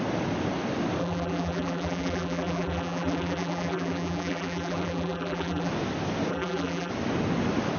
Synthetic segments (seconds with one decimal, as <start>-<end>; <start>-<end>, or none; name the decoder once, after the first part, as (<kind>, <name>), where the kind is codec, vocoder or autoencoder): 1.0-5.7 (vocoder, BigVGAN v2); 6.3-6.9